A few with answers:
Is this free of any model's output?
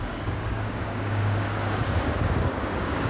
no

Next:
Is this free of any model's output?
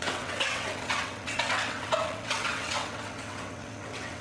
no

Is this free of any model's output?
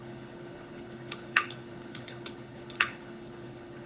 no